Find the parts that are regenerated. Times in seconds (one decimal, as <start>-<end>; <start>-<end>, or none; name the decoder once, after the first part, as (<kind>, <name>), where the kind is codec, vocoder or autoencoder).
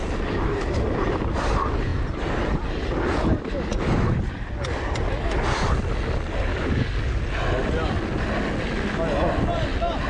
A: 6.5-7.2 (codec, DAC)